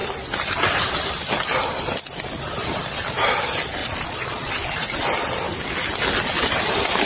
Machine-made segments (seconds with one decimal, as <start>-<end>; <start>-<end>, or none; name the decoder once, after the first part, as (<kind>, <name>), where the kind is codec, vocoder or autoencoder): 3.8-4.5 (vocoder, Vocos)